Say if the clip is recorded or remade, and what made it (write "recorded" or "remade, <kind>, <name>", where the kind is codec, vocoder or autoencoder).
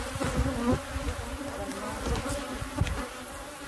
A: recorded